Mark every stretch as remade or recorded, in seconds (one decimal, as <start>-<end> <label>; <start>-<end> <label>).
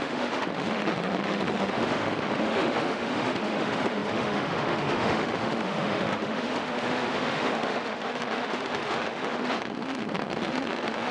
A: 0.0-11.1 remade